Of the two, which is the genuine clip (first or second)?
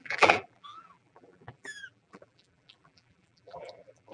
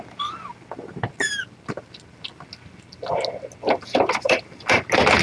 second